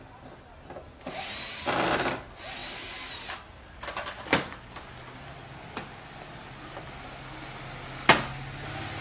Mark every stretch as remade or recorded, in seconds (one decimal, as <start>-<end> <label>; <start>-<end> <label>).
0.0-9.0 recorded